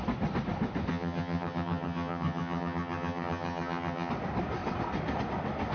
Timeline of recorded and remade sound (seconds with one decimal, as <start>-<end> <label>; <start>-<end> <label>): 0.0-0.9 recorded; 0.9-4.1 remade; 4.1-5.7 recorded